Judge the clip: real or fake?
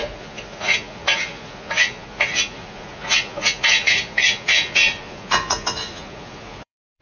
fake